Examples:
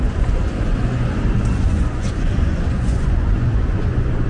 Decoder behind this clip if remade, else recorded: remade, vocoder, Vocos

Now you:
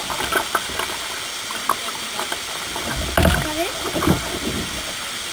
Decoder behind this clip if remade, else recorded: recorded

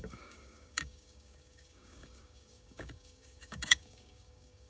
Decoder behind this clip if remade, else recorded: remade, codec, DAC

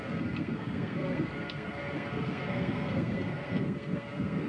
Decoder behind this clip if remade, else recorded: remade, codec, SNAC